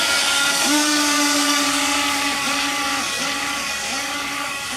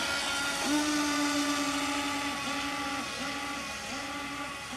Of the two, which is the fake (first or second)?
first